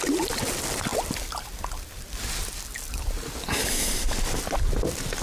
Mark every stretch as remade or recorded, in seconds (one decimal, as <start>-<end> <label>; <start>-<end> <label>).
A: 0.0-5.2 recorded

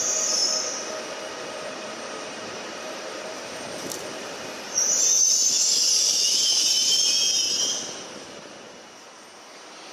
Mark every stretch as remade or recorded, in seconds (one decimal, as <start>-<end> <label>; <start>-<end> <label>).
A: 0.0-0.4 remade; 0.4-1.3 recorded; 1.3-6.9 remade; 6.9-8.0 recorded; 8.0-9.9 remade

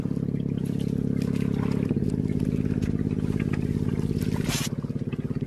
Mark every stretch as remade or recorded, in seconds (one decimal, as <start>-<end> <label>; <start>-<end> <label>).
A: 0.0-5.5 recorded

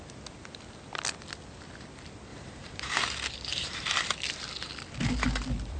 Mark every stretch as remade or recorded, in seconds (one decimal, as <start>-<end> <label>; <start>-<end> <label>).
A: 0.0-2.3 recorded; 2.3-2.9 remade; 2.9-3.5 recorded; 3.5-4.1 remade; 4.1-5.8 recorded

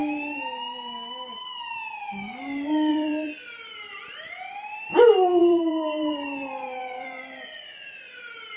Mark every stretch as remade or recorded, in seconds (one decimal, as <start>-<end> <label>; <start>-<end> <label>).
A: 0.0-2.9 recorded; 2.9-8.6 remade

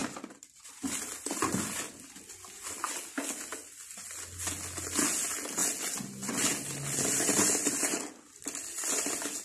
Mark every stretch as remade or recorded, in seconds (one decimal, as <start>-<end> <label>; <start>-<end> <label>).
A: 0.0-9.4 recorded

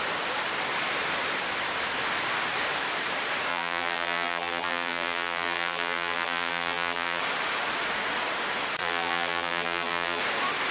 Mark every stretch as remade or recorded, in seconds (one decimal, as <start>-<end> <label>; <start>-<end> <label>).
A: 0.0-3.5 recorded; 3.5-7.2 remade; 7.2-8.8 recorded; 8.8-10.2 remade; 10.2-10.7 recorded

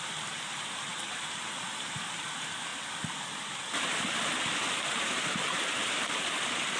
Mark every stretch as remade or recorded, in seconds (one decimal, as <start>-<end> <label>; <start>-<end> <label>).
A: 0.0-2.7 remade; 2.7-4.9 recorded; 4.9-6.8 remade